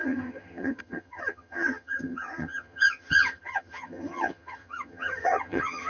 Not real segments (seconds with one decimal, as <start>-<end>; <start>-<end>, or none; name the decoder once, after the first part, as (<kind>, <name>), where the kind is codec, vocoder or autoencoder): 0.0-5.9 (vocoder, HiFi-GAN)